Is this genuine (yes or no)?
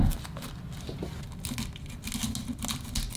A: yes